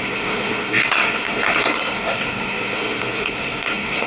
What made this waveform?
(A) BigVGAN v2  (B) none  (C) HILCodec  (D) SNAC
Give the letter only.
D